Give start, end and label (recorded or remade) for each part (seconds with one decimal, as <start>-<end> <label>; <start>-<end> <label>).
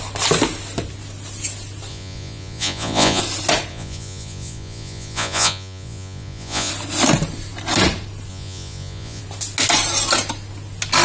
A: 0.0-1.9 recorded; 1.9-3.2 remade; 3.2-3.7 recorded; 3.7-6.7 remade; 6.7-8.3 recorded; 8.3-9.2 remade; 9.2-11.0 recorded